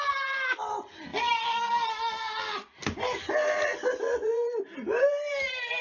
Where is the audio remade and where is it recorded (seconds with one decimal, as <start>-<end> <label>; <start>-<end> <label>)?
0.0-5.8 remade

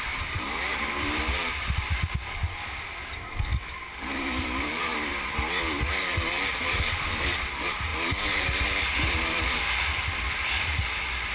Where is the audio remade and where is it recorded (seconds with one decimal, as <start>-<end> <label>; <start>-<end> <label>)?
0.0-3.5 remade; 3.5-4.4 recorded; 4.4-5.1 remade; 5.1-6.0 recorded; 6.0-7.9 remade; 7.9-8.4 recorded; 8.4-11.3 remade

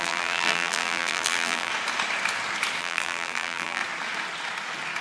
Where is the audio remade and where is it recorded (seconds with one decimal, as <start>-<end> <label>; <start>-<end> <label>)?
0.0-1.7 remade; 1.7-2.8 recorded; 2.8-3.8 remade; 3.8-5.0 recorded

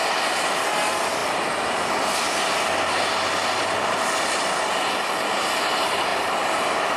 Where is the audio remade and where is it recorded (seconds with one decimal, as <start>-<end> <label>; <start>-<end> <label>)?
0.0-6.1 recorded; 6.1-7.0 remade

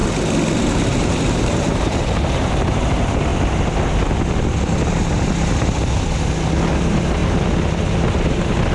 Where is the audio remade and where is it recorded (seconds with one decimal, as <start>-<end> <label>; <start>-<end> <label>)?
0.0-0.6 recorded; 0.6-3.3 remade; 3.3-6.7 recorded; 6.7-7.2 remade; 7.2-8.7 recorded

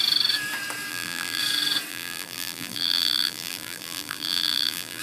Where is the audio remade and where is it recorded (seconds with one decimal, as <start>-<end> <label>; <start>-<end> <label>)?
0.0-0.9 recorded; 0.9-1.4 remade; 1.4-1.9 recorded; 1.9-5.0 remade

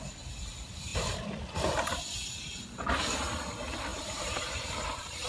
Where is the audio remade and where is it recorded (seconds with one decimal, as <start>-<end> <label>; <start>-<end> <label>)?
0.0-0.9 recorded; 0.9-2.0 remade; 2.0-3.9 recorded; 3.9-5.3 remade